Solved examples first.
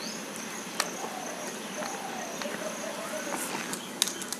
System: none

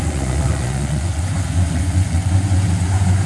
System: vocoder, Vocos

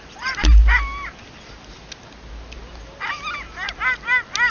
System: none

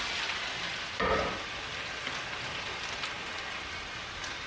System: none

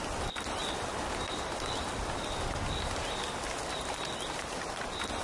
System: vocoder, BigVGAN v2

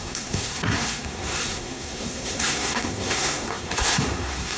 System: codec, SNAC